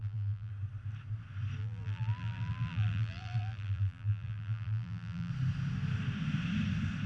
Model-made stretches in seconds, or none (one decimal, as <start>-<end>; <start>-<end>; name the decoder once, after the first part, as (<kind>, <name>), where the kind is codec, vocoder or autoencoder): 0.0-0.5 (vocoder, BigVGAN v2); 1.6-5.3

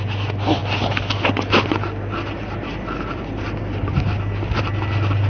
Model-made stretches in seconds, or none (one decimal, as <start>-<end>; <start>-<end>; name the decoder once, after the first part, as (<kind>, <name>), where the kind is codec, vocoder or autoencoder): none